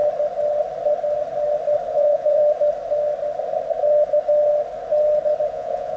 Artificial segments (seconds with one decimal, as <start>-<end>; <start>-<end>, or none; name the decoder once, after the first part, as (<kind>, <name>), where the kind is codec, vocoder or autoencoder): 1.9-2.4 (vocoder, Vocos); 5.5-6.0